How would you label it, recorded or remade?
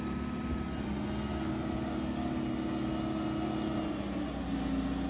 recorded